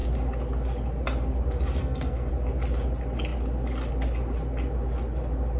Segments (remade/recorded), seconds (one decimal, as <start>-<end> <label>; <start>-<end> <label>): 0.0-1.8 recorded; 1.8-2.3 remade; 2.3-5.6 recorded